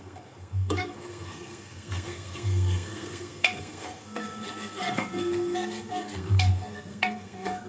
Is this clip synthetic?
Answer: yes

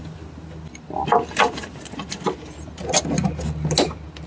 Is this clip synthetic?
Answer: no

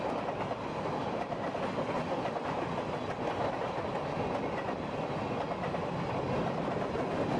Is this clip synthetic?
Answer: no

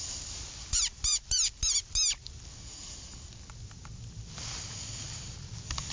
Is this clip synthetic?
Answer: no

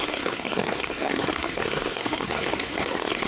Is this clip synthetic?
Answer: yes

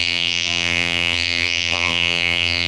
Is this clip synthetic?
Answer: yes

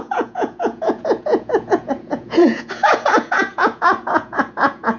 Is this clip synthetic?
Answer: yes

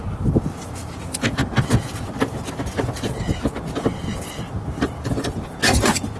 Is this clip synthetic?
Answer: no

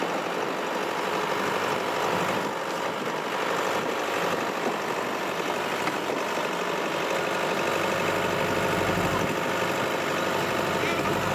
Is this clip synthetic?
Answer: no